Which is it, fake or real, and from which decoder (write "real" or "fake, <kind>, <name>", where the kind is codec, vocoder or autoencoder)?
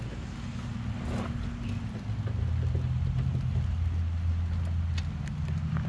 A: real